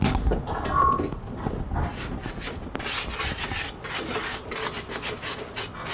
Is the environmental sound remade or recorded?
recorded